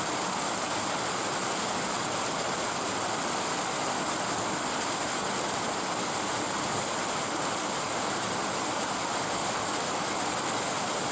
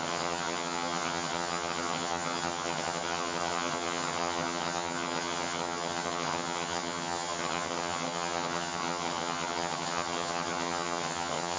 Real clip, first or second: first